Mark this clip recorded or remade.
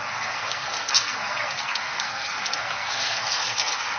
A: remade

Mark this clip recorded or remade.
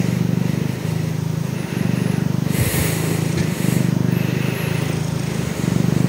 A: recorded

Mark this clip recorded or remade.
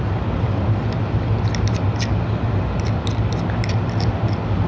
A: recorded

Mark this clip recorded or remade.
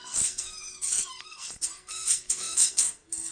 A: remade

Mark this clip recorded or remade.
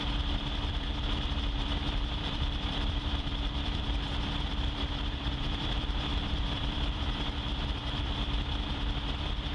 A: remade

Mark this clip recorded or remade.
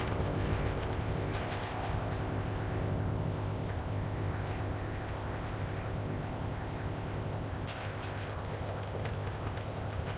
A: remade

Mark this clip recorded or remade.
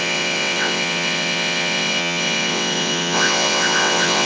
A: remade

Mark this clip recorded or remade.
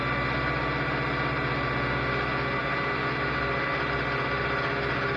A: recorded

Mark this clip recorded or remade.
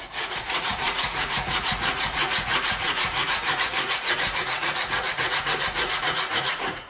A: remade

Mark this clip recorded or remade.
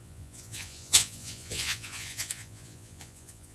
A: remade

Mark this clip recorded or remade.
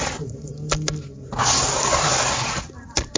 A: recorded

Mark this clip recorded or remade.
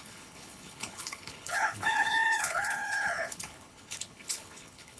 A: remade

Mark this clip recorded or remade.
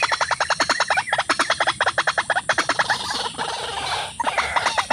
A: recorded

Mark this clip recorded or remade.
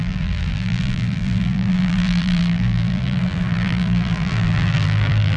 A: remade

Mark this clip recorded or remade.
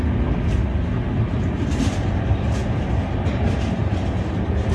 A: recorded